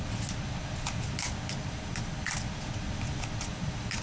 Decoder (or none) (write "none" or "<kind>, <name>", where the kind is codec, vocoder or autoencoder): none